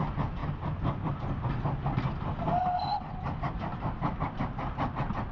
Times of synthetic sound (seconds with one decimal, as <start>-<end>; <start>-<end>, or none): 1.8-2.6